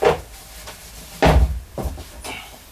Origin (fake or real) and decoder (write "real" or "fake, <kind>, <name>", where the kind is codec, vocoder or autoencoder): real